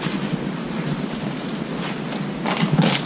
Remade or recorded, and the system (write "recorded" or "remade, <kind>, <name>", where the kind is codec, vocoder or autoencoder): recorded